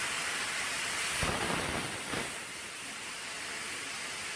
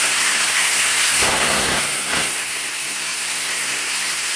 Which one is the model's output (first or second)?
second